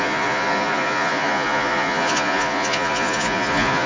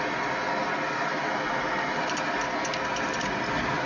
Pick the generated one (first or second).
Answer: first